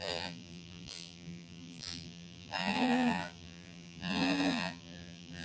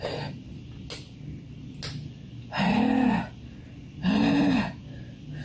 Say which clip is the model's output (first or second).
first